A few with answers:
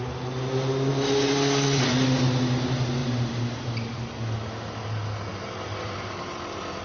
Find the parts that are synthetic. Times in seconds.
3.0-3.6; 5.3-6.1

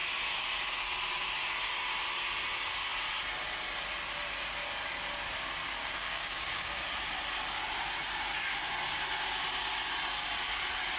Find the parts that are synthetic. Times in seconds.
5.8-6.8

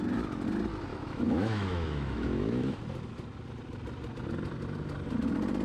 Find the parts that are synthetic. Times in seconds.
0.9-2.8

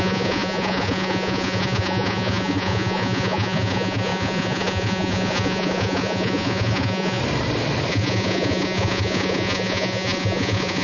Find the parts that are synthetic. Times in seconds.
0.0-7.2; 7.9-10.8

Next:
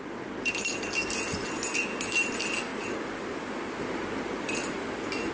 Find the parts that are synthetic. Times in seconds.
none

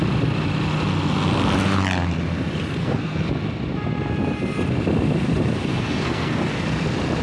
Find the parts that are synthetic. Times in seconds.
2.8-3.3; 5.7-6.4